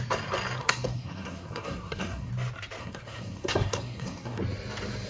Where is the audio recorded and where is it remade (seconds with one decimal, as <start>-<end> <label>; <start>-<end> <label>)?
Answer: 0.0-0.6 recorded; 0.6-2.3 remade; 2.3-2.8 recorded; 2.8-4.4 remade; 4.4-5.1 recorded

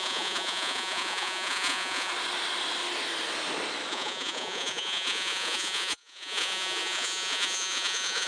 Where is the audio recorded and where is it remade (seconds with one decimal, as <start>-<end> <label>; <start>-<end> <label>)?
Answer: 0.0-2.1 remade; 2.1-3.9 recorded; 3.9-8.3 remade

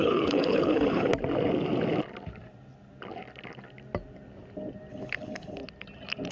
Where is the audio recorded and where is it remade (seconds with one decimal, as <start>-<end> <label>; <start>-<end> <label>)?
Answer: 0.0-1.1 remade; 1.1-4.9 recorded; 4.9-5.6 remade; 5.6-6.3 recorded

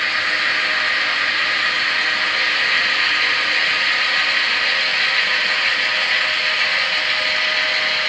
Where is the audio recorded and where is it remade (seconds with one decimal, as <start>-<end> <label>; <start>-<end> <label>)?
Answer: 0.0-1.1 recorded; 1.1-1.7 remade; 1.7-8.1 recorded

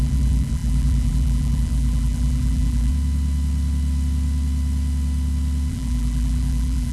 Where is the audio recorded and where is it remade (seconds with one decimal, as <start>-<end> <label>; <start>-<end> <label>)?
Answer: 0.0-2.9 remade; 2.9-5.7 recorded; 5.7-6.9 remade

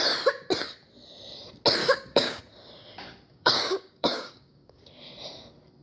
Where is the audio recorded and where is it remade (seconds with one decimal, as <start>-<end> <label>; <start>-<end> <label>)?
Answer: 0.0-1.8 recorded; 1.8-2.4 remade; 2.4-3.3 recorded; 3.3-4.8 remade; 4.8-5.8 recorded

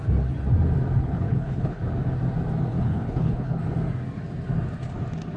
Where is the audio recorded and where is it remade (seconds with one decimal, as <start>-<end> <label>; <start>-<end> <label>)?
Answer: 0.0-1.0 recorded; 1.0-1.8 remade; 1.8-2.7 recorded; 2.7-3.6 remade; 3.6-5.4 recorded